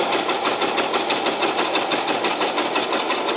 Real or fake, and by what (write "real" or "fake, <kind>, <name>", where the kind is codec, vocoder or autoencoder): real